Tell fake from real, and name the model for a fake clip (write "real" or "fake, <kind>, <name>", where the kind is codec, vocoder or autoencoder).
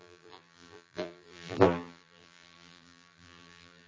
fake, vocoder, BigVGAN v2